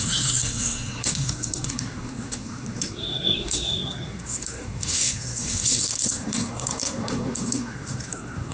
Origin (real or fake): fake